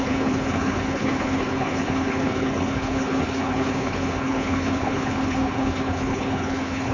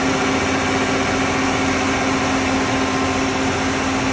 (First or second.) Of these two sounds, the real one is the second